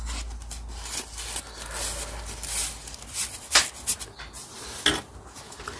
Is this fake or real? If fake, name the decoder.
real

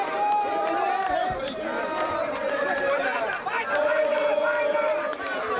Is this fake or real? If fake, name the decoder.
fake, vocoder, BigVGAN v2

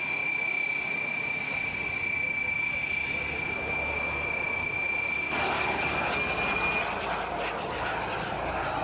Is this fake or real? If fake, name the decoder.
real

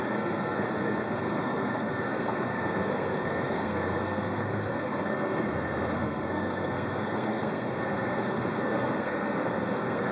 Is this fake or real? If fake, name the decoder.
fake, codec, SNAC